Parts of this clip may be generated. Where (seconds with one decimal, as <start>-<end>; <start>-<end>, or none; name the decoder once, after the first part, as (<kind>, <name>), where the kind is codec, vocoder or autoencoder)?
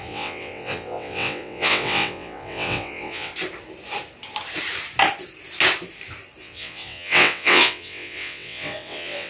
0.0-3.3 (vocoder, WaveNeXt); 6.4-9.3